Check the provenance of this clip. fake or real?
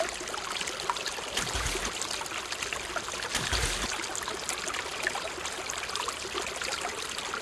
real